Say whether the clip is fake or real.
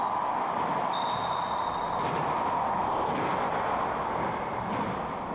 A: real